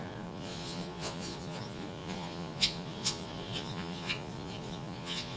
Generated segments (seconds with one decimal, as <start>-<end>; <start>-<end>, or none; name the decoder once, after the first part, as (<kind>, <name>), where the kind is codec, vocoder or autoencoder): 0.0-5.4 (vocoder, Vocos)

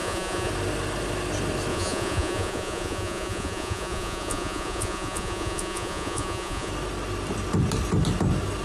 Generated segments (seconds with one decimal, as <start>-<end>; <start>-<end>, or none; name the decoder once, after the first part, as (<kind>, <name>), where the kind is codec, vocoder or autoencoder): 0.0-0.5 (vocoder, Vocos); 1.7-6.7

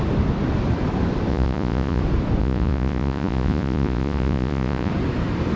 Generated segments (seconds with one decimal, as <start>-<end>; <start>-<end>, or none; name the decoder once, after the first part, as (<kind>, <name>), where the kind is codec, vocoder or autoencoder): 1.3-2.0 (vocoder, Vocos); 2.4-4.9

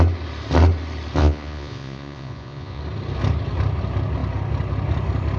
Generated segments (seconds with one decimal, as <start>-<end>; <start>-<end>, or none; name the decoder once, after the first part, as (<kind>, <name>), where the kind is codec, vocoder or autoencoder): 1.2-2.8 (vocoder, Vocos)

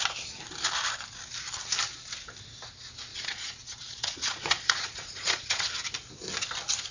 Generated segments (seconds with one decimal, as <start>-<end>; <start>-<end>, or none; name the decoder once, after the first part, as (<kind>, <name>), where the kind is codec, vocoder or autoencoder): 3.1-5.7 (vocoder, Vocos)

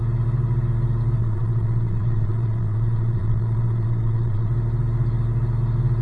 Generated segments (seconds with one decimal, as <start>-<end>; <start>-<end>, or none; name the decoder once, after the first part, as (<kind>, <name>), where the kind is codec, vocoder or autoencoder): 1.2-4.5 (vocoder, Vocos)

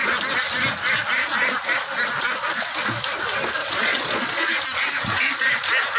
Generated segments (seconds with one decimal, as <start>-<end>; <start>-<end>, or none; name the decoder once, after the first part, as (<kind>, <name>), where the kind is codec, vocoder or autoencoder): 3.6-4.5 (vocoder, Vocos)